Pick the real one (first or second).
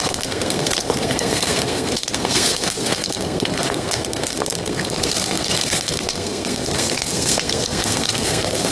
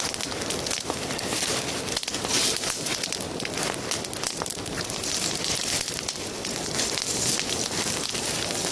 second